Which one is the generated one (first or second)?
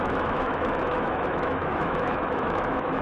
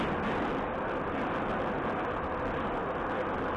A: first